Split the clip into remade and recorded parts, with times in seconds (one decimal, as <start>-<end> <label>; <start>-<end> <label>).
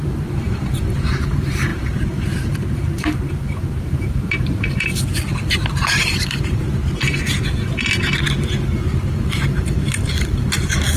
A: 0.0-6.7 remade; 6.7-9.0 recorded; 9.0-11.0 remade